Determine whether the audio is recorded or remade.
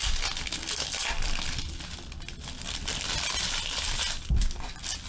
recorded